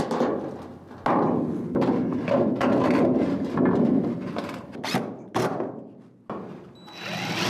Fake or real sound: real